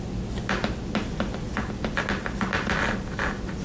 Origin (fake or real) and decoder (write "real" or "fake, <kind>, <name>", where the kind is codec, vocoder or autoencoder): real